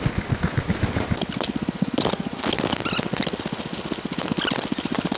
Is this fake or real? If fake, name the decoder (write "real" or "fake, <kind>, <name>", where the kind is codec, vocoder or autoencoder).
real